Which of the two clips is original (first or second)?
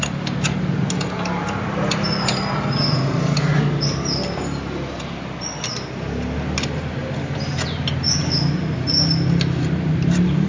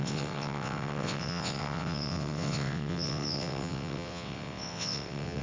first